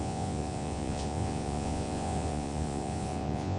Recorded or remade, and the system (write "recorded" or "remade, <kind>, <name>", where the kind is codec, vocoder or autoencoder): remade, vocoder, Vocos